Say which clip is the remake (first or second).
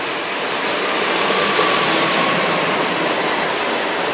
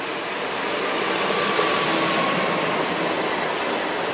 first